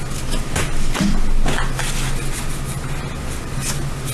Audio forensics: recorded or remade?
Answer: recorded